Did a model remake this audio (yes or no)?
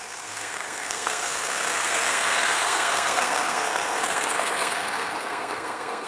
yes